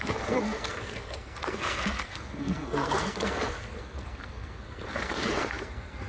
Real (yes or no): no